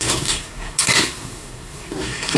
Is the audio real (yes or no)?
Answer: no